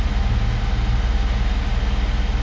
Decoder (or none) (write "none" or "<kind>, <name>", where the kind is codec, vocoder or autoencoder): none